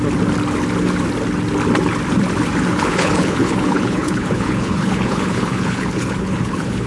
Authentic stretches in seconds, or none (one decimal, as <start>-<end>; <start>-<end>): 0.0-2.7